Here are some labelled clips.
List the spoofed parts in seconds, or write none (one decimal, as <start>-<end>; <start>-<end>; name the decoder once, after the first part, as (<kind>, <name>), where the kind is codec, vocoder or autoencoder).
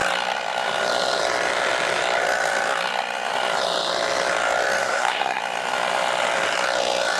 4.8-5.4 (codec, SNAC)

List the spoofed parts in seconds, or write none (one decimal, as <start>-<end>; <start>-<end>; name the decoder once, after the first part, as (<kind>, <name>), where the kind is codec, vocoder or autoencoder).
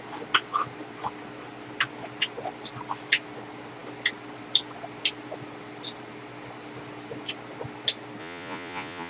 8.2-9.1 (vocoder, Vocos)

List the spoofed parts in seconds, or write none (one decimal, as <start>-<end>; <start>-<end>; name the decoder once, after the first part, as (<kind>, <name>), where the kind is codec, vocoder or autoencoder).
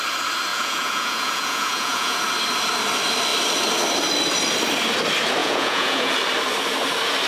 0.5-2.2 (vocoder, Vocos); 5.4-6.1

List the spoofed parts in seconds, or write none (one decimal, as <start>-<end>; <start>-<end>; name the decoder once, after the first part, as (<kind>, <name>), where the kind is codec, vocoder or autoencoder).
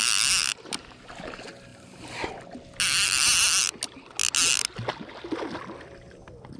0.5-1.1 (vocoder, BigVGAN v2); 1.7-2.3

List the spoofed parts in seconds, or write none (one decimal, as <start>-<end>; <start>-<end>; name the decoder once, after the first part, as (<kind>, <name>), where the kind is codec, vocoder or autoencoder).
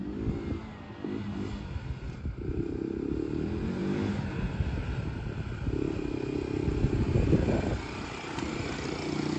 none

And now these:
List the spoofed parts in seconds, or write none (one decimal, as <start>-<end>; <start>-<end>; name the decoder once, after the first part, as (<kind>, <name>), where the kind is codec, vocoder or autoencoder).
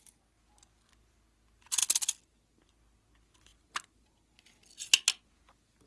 none